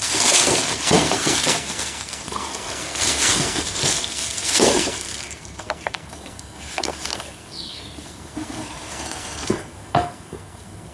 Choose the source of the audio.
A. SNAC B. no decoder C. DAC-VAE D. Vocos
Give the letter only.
A